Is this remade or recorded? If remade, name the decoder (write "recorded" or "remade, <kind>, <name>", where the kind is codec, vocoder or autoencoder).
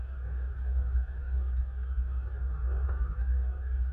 remade, codec, DAC